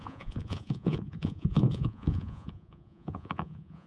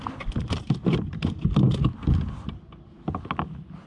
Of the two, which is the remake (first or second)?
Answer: first